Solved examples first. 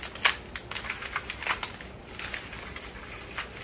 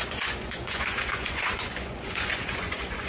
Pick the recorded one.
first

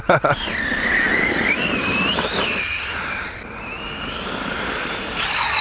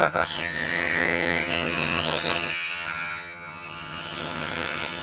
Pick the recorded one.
first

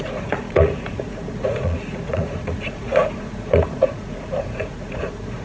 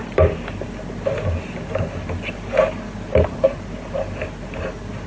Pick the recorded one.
second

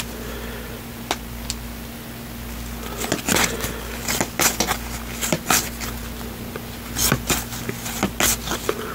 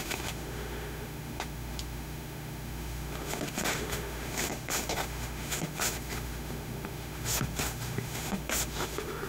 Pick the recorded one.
first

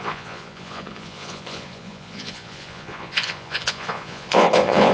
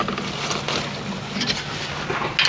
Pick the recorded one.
second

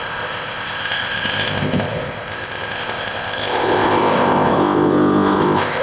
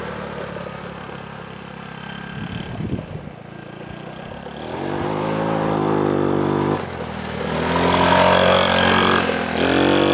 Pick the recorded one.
second